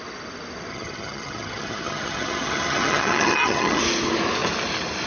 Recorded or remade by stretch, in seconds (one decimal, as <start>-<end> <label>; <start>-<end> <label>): 0.0-0.7 recorded; 0.7-3.8 remade; 3.8-5.1 recorded